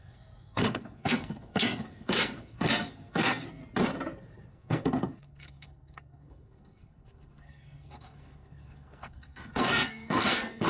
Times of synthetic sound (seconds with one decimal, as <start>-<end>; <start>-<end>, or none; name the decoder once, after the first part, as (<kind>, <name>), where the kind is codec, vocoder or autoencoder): 0.0-3.6 (codec, SNAC); 4.5-10.7